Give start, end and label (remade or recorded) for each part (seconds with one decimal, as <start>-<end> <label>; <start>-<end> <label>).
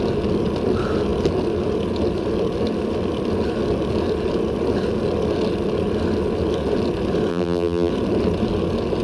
0.0-7.3 recorded; 7.3-7.9 remade; 7.9-9.0 recorded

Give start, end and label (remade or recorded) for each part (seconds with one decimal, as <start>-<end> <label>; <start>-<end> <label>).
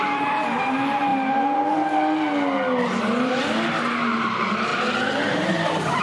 0.0-4.7 recorded; 4.7-6.0 remade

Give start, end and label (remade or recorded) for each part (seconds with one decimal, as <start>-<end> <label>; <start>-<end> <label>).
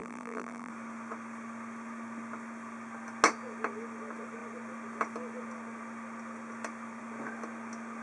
0.0-0.7 remade; 0.7-8.0 recorded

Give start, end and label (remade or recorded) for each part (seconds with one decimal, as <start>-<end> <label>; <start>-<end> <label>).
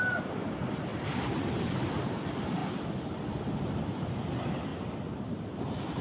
0.0-2.6 remade; 2.6-3.3 recorded; 3.3-6.0 remade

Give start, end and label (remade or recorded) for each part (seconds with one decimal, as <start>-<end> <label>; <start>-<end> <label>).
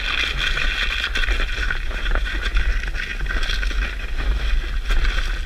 0.0-1.5 recorded; 1.5-2.3 remade; 2.3-5.5 recorded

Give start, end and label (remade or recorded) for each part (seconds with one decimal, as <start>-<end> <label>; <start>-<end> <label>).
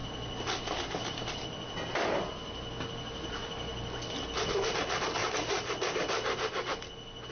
0.0-7.3 recorded